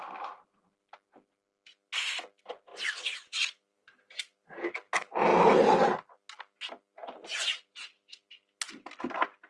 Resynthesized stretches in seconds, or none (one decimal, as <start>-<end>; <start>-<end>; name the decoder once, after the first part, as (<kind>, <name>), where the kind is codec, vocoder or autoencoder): 2.7-4.7 (vocoder, BigVGAN v2); 7.0-7.9